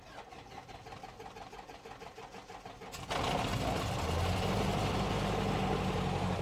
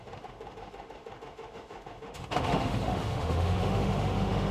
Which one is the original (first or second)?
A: first